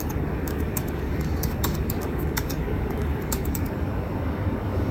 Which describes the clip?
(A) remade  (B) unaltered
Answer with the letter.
A